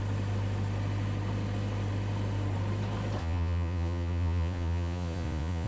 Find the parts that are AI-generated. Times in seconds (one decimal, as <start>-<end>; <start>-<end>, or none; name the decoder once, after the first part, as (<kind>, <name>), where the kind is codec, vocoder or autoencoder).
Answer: 3.2-5.7 (vocoder, Vocos)